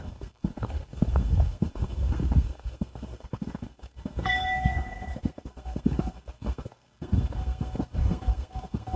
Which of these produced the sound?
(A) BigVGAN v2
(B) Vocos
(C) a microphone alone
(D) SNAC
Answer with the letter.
D